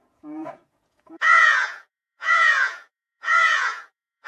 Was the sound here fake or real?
fake